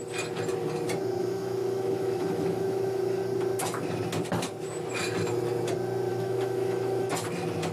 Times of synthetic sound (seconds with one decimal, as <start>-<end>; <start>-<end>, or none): 1.2-3.2; 6.1-7.1